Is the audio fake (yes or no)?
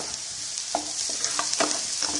no